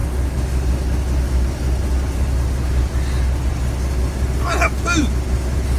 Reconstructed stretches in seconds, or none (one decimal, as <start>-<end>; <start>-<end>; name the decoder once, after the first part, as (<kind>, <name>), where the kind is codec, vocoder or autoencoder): none